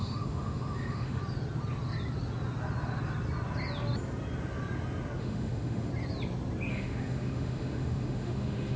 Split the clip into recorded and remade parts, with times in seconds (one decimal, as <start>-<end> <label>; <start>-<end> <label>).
0.0-1.2 remade; 1.2-5.2 recorded; 5.2-5.9 remade; 5.9-6.7 recorded; 6.7-8.8 remade